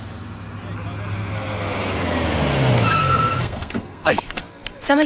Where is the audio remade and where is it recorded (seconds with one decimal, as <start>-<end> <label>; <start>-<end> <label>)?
0.0-3.0 recorded; 3.0-4.4 remade; 4.4-5.1 recorded

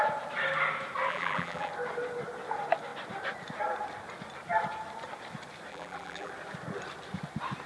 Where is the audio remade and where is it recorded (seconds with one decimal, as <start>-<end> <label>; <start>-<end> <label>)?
0.0-1.1 recorded; 1.1-1.7 remade; 1.7-5.7 recorded; 5.7-6.3 remade; 6.3-7.7 recorded

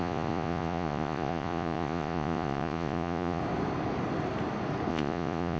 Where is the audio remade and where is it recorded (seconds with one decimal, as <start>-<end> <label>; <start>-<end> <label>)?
0.0-3.4 remade; 3.4-4.9 recorded; 4.9-5.6 remade

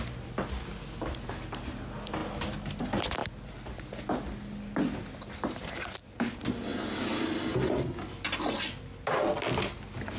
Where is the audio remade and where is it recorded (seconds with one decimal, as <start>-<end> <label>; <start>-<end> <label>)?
0.0-10.2 recorded

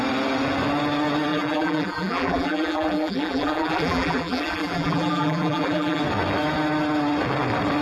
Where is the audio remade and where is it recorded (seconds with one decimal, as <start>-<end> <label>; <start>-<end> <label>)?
0.0-1.3 recorded; 1.3-6.0 remade; 6.0-7.8 recorded